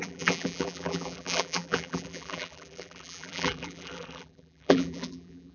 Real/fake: fake